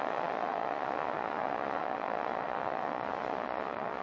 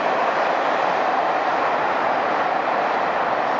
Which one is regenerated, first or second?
first